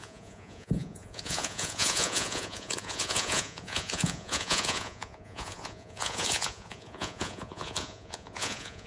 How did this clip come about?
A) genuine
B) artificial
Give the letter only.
B